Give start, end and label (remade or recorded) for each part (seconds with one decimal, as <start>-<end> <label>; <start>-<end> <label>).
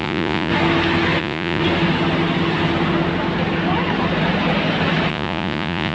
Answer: 0.0-0.5 remade; 0.5-1.2 recorded; 1.2-1.6 remade; 1.6-5.1 recorded; 5.1-5.9 remade